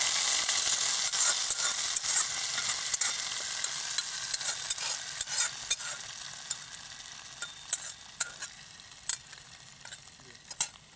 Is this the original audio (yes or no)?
yes